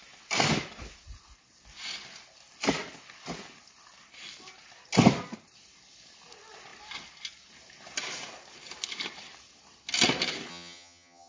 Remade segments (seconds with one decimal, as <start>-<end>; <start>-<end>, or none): 10.5-11.3